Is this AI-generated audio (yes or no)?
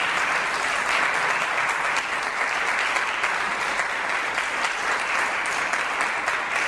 no